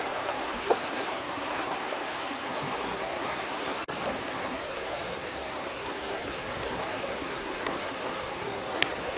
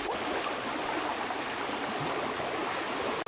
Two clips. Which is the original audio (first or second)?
second